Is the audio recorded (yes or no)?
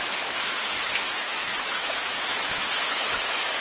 no